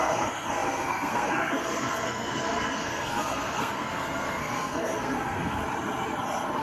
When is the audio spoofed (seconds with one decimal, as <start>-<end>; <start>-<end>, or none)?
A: 0.0-5.6